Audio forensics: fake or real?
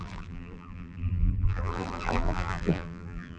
fake